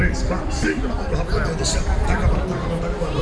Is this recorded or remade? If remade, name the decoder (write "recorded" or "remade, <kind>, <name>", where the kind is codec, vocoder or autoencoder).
recorded